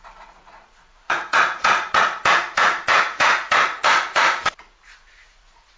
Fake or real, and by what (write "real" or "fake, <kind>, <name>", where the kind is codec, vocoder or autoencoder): fake, vocoder, Vocos